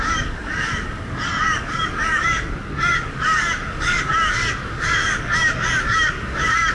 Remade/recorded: remade